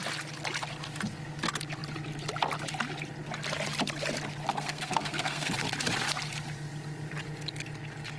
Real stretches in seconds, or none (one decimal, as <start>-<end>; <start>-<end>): 0.0-4.5; 5.5-8.2